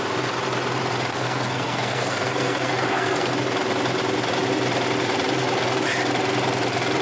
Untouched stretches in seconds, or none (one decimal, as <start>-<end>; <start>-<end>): 0.0-1.1; 3.3-7.0